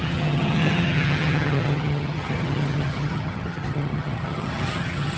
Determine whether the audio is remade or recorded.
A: remade